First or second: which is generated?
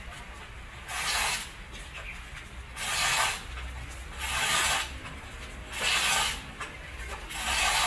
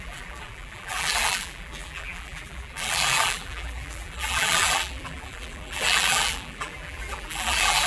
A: second